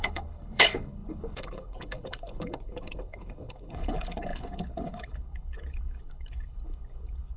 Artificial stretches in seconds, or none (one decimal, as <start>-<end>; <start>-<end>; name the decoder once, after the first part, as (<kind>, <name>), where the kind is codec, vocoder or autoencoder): 0.0-7.4 (codec, HILCodec)